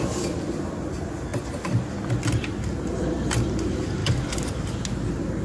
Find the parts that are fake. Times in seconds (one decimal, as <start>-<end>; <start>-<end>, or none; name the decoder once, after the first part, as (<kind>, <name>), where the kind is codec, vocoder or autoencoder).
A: 4.0-4.8 (vocoder, BigVGAN v2)